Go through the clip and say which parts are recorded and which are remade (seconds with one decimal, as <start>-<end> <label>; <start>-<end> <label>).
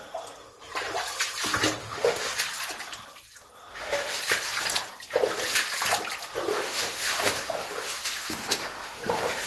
0.0-1.8 recorded; 1.8-2.3 remade; 2.3-3.7 recorded; 3.7-4.2 remade; 4.2-6.5 recorded; 6.5-9.5 remade